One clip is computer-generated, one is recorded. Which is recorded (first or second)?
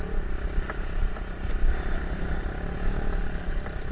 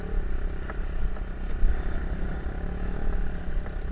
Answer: second